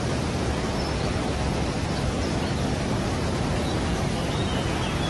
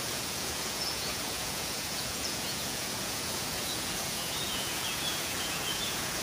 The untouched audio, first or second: first